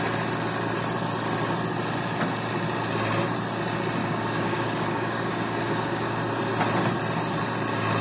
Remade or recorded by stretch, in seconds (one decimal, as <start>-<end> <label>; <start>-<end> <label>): 0.0-4.0 recorded; 4.0-6.2 remade; 6.2-8.0 recorded